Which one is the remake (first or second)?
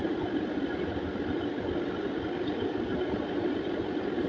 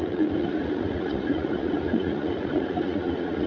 second